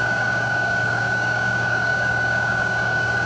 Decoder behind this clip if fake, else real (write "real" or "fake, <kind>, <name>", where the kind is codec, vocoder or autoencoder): fake, codec, DAC